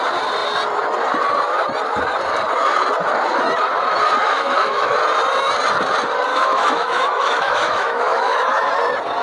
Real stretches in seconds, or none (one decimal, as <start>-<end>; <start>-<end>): 0.0-4.2; 4.9-6.3; 8.7-9.2